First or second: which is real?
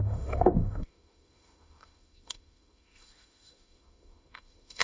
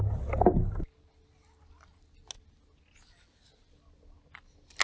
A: second